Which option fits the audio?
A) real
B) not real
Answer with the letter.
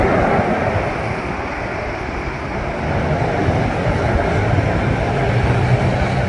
A